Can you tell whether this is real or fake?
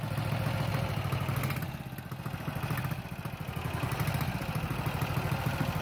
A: real